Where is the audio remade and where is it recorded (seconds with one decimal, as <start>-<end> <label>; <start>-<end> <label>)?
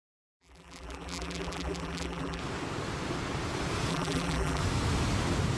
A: 0.0-2.4 remade; 2.4-3.9 recorded; 3.9-4.6 remade; 4.6-5.6 recorded